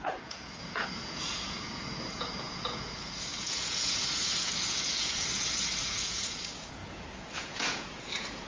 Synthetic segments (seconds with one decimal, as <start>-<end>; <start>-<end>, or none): 0.0-8.5